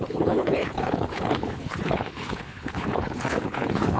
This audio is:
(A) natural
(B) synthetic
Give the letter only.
B